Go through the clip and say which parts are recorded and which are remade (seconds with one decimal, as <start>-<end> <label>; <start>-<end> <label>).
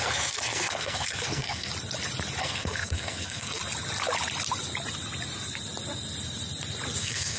0.0-1.7 remade; 1.7-2.4 recorded; 2.4-3.6 remade; 3.6-7.0 recorded; 7.0-7.4 remade